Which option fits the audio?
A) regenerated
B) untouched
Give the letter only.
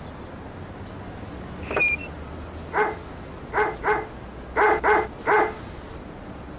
B